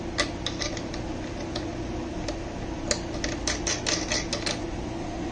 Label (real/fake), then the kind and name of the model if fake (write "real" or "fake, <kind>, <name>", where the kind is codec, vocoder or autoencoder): real